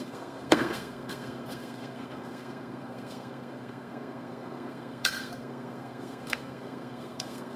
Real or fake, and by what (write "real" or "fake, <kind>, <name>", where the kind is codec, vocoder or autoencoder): fake, codec, SNAC